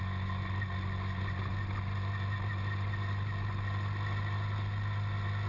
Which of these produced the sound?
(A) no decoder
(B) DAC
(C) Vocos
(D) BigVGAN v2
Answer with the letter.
A